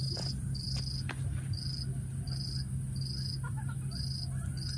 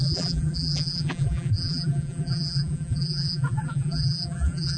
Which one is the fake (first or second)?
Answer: second